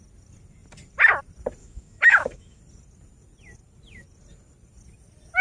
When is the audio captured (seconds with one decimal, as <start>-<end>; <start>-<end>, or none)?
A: 0.0-1.6; 2.6-5.4